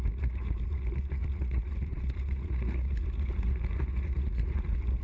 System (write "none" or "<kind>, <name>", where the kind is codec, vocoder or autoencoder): vocoder, Vocos